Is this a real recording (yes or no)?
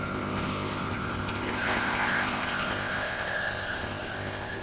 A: no